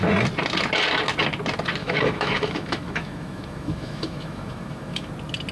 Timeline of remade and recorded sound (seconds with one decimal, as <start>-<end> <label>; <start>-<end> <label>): 0.0-1.8 recorded; 1.8-5.1 remade; 5.1-5.5 recorded